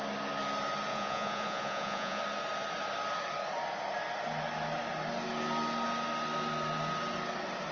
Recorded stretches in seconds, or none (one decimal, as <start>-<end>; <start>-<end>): 0.0-0.9; 2.2-7.7